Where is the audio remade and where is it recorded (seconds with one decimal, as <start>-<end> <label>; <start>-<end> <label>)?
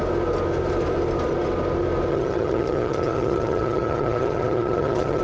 0.0-2.1 recorded; 2.1-5.2 remade